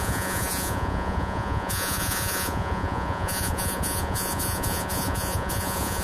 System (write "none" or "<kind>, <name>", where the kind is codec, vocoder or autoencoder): vocoder, Vocos